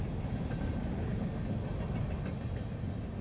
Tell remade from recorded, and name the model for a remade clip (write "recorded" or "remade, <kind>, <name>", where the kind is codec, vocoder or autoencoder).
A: recorded